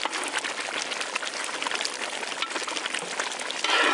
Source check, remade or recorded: recorded